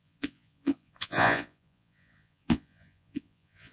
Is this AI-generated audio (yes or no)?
yes